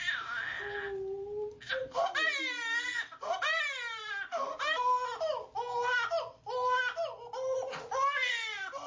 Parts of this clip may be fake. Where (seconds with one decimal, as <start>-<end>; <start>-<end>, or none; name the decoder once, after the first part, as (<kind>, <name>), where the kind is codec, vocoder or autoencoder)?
none